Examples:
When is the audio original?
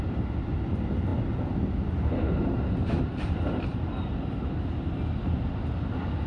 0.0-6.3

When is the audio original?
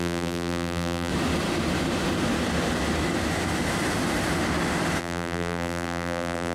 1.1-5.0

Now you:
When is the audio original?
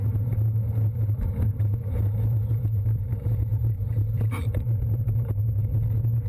none